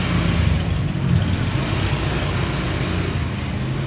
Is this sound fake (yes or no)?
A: no